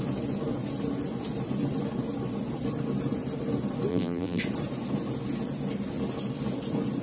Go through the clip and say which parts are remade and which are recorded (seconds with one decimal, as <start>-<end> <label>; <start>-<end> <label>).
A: 0.0-3.9 recorded; 3.9-4.4 remade; 4.4-7.0 recorded